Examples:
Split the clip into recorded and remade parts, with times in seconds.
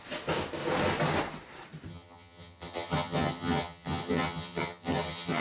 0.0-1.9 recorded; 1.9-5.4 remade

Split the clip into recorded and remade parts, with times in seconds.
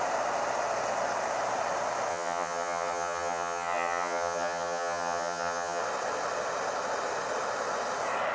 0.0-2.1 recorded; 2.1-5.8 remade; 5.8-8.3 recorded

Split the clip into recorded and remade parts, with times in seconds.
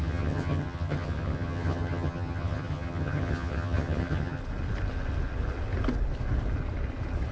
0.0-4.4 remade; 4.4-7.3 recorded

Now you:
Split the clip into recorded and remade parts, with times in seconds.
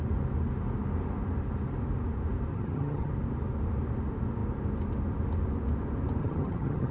0.0-2.5 recorded; 2.5-3.1 remade; 3.1-6.2 recorded; 6.2-6.9 remade